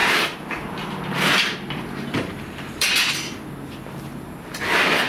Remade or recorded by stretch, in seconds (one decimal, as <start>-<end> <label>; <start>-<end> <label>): 0.0-3.1 remade; 3.1-5.1 recorded